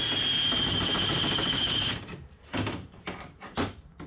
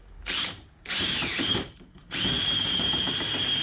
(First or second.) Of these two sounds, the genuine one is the first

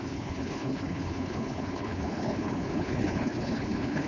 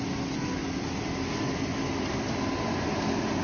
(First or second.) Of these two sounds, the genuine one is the second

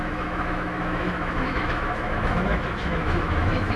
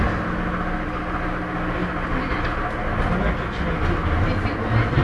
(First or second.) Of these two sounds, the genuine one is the second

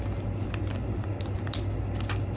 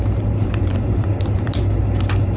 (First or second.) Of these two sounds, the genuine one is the first